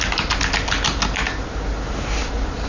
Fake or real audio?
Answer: real